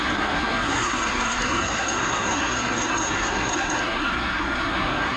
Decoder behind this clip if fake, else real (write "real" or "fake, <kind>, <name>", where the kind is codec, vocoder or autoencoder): fake, codec, SNAC